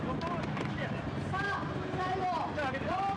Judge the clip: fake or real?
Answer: real